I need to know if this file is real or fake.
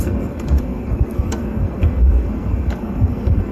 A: fake